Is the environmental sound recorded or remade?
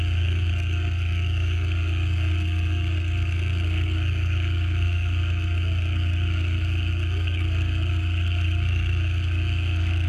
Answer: remade